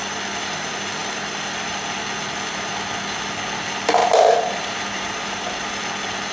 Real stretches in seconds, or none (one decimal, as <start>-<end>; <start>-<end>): 0.0-4.0; 5.8-6.3